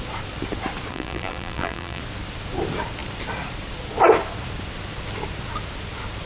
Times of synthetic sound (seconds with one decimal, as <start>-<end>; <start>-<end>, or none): 0.9-2.0